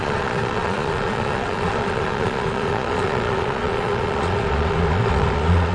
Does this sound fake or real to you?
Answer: fake